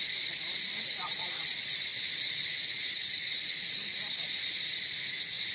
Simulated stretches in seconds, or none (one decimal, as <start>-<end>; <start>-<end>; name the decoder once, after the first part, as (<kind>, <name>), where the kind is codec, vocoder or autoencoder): none